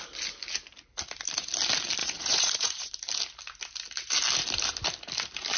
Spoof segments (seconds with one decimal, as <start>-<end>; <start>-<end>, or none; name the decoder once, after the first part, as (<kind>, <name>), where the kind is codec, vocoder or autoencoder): 2.0-2.9 (vocoder, Vocos)